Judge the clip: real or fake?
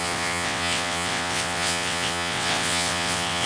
fake